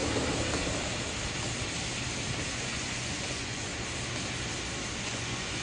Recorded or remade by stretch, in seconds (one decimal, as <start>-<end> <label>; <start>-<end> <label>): 0.0-2.5 recorded; 2.5-3.7 remade; 3.7-5.0 recorded; 5.0-5.6 remade